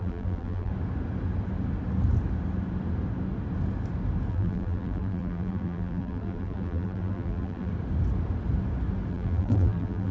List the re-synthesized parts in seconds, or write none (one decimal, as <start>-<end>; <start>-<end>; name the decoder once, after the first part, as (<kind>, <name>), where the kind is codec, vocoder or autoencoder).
0.0-0.7 (vocoder, BigVGAN v2); 4.3-7.7; 9.1-10.1